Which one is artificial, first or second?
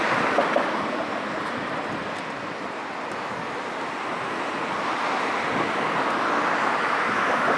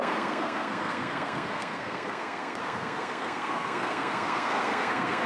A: second